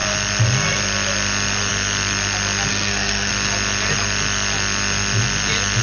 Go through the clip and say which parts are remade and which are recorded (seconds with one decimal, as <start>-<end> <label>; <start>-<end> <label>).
0.0-2.7 recorded; 2.7-3.3 remade; 3.3-5.8 recorded